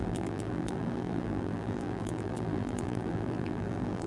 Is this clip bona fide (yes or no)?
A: no